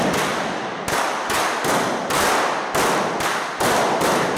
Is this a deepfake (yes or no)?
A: no